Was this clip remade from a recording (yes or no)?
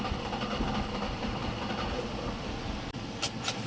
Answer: no